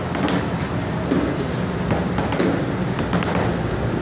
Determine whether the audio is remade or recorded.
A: recorded